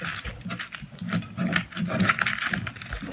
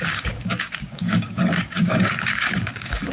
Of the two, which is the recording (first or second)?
first